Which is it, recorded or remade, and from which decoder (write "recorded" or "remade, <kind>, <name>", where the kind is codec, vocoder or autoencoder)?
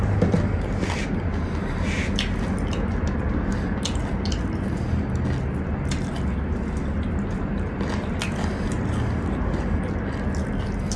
recorded